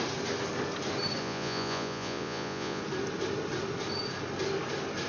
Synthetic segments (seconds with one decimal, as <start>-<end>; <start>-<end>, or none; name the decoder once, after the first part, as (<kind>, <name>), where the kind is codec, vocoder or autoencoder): 1.2-2.8 (vocoder, Vocos)